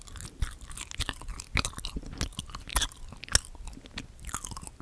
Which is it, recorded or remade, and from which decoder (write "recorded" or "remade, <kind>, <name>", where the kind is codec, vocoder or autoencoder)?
recorded